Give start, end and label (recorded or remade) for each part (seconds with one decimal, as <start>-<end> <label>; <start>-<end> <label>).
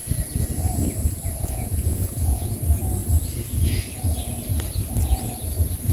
0.0-1.4 recorded; 1.4-2.5 remade; 2.5-5.9 recorded